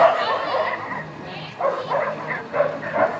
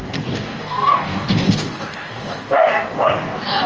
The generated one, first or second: second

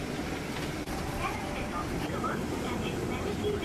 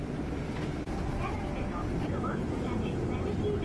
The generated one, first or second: first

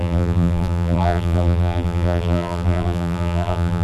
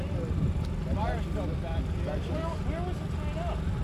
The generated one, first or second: first